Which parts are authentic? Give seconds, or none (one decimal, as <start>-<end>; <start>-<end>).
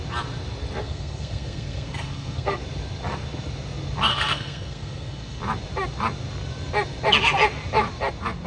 0.0-0.8; 2.6-4.1; 5.4-8.5